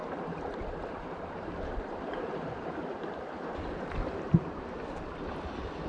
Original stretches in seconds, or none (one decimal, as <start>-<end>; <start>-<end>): 3.5-5.9